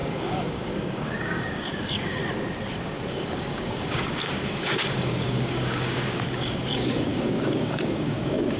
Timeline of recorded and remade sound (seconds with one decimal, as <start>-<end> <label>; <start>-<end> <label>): 0.0-2.2 remade; 2.2-3.1 recorded; 3.1-8.6 remade